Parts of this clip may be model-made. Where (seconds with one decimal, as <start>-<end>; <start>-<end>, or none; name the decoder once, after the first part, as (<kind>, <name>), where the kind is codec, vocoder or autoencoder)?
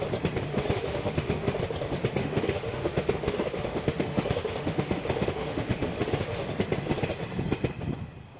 0.5-1.6 (autoencoder, DAC-VAE); 2.2-6.5